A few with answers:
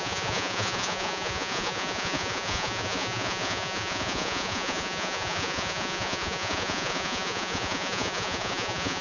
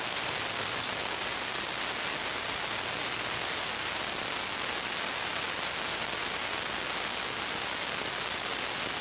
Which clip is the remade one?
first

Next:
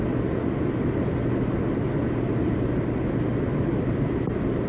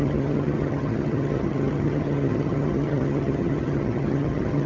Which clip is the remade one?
second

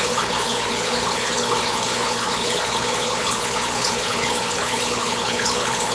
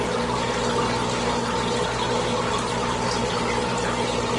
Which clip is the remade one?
first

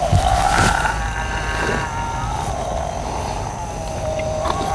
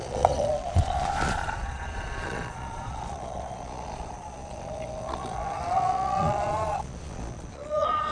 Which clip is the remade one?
second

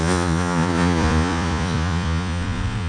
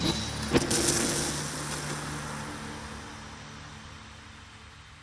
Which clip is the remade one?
first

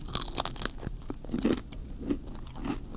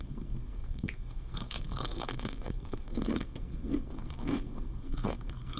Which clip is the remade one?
second